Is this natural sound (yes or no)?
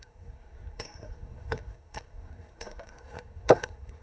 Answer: no